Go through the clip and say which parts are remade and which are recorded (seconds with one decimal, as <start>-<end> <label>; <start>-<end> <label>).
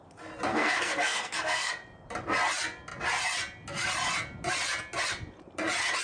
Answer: 0.0-0.5 recorded; 0.5-1.7 remade; 1.7-6.0 recorded